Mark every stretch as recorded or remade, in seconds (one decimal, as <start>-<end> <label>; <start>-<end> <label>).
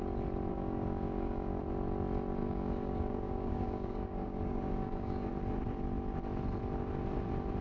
0.0-0.5 recorded; 0.5-1.6 remade; 1.6-2.4 recorded; 2.4-5.3 remade; 5.3-7.6 recorded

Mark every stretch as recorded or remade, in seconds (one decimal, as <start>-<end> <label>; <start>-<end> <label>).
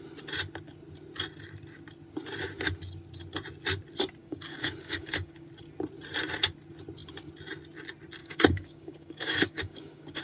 0.0-4.2 recorded; 4.2-5.5 remade; 5.5-8.2 recorded; 8.2-10.2 remade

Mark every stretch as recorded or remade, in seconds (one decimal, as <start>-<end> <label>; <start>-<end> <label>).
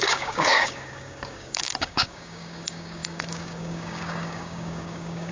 0.0-5.3 remade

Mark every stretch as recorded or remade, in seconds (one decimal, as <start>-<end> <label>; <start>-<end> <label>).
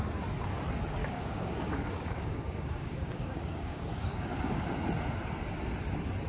0.0-1.0 recorded; 1.0-4.7 remade; 4.7-6.3 recorded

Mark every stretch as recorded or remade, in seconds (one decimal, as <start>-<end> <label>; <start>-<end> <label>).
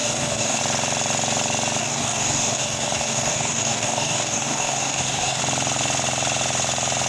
0.0-0.6 remade; 0.6-1.8 recorded; 1.8-5.4 remade; 5.4-7.1 recorded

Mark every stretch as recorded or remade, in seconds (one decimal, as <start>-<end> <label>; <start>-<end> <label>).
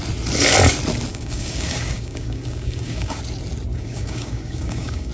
0.0-1.1 recorded; 1.1-3.2 remade; 3.2-3.7 recorded; 3.7-5.1 remade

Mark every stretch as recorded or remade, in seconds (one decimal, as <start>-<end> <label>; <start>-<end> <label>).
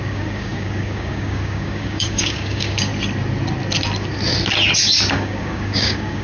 0.0-2.9 remade; 2.9-5.1 recorded; 5.1-6.2 remade